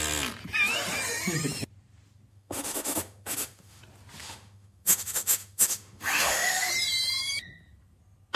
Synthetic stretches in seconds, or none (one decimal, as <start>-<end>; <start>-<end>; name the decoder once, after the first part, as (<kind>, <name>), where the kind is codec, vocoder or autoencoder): 2.3-3.8 (autoencoder, DAC-VAE); 4.2-6.7